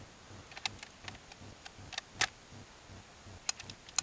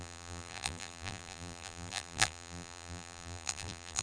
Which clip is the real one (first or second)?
first